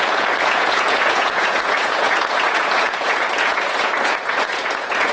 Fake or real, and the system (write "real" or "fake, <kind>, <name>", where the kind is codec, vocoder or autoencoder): fake, vocoder, Vocos